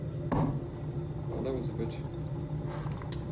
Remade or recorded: recorded